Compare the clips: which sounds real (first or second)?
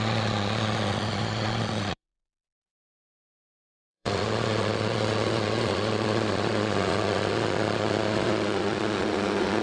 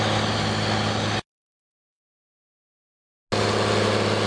second